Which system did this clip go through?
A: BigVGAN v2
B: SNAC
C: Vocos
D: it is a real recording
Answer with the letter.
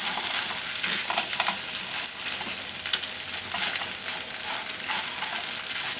D